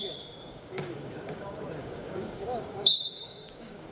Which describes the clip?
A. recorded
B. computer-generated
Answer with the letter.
B